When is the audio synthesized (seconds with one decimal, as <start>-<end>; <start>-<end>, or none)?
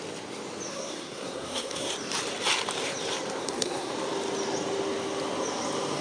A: 0.7-1.9; 3.4-3.9